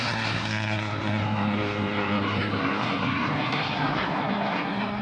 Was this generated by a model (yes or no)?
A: yes